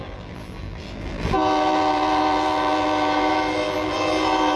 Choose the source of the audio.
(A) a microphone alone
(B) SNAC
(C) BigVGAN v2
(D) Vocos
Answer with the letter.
C